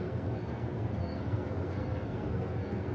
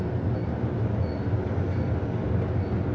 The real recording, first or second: second